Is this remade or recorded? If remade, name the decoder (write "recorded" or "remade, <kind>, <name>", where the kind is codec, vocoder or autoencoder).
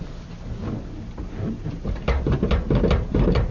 recorded